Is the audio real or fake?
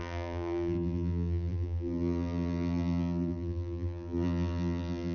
fake